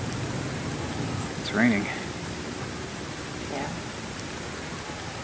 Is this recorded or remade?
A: recorded